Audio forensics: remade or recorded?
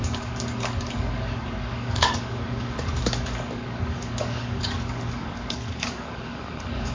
remade